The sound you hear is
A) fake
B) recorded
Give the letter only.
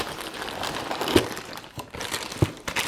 A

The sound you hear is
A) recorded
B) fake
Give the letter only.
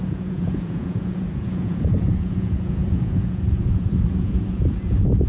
B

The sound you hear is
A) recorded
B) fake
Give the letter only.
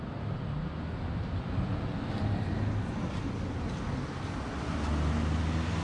A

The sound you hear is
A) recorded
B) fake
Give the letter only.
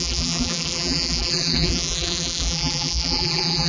B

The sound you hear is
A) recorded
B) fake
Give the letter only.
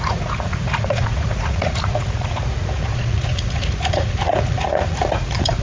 B